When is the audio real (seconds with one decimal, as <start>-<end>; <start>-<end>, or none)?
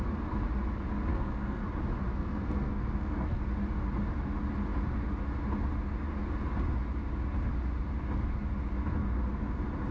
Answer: 0.0-1.1; 1.6-2.1; 3.4-9.9